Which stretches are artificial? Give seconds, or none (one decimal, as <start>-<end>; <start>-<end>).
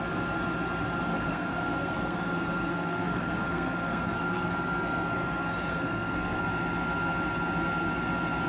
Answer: 1.1-4.5; 5.7-6.4